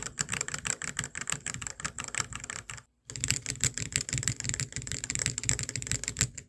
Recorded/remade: recorded